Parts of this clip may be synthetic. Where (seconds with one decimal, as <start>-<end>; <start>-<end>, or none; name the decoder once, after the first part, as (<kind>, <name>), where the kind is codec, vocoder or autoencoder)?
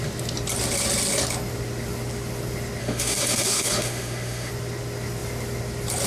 2.8-4.5 (autoencoder, DAC-VAE)